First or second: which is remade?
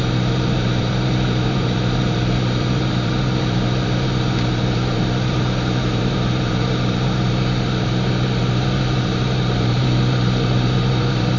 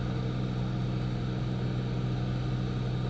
first